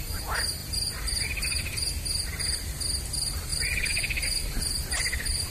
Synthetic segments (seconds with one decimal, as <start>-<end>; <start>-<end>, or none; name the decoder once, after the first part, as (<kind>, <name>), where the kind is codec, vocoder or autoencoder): 0.6-1.8 (vocoder, BigVGAN v2); 3.5-4.9